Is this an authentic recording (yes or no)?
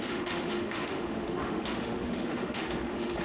no